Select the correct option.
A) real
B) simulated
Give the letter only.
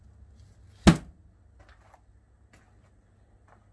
A